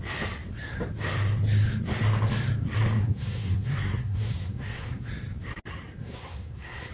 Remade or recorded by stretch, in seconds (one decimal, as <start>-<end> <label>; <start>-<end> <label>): 0.0-3.0 recorded; 3.0-5.1 remade; 5.1-6.0 recorded; 6.0-6.9 remade

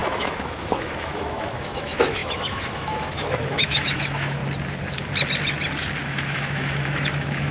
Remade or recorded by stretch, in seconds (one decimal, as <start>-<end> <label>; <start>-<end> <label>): 0.0-4.4 remade; 4.4-6.0 recorded; 6.0-7.5 remade

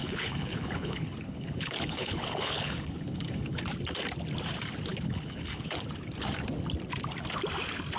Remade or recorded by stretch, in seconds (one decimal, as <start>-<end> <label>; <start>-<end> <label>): 0.0-3.6 remade; 3.6-4.9 recorded; 4.9-5.7 remade; 5.7-8.0 recorded

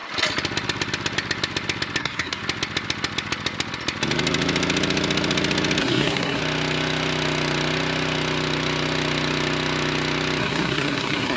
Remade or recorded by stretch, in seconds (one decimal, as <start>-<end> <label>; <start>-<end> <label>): 0.0-2.0 recorded; 2.0-2.4 remade; 2.4-5.8 recorded; 5.8-6.4 remade; 6.4-10.4 recorded; 10.4-11.4 remade

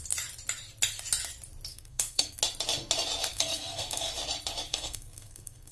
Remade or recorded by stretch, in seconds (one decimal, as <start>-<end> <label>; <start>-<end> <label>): 0.0-1.7 recorded; 1.7-2.4 remade; 2.4-3.3 recorded; 3.3-4.1 remade; 4.1-4.7 recorded; 4.7-5.7 remade

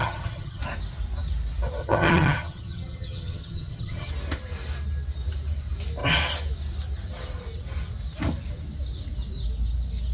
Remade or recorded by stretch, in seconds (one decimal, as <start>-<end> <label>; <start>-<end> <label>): 0.0-0.6 remade; 0.6-1.8 recorded; 1.8-4.1 remade; 4.1-10.1 recorded

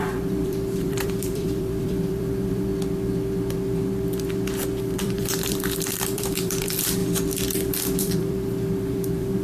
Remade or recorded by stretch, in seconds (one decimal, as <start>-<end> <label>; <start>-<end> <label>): 0.0-2.7 remade; 2.7-4.8 recorded; 4.8-7.0 remade; 7.0-8.0 recorded; 8.0-9.4 remade

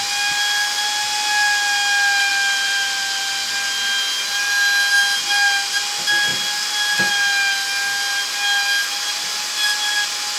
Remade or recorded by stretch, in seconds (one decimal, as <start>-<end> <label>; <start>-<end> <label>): 0.0-2.3 recorded; 2.3-3.2 remade; 3.2-10.4 recorded